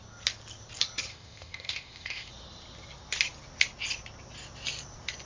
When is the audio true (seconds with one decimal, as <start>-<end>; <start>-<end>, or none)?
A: 0.0-1.1; 2.3-5.3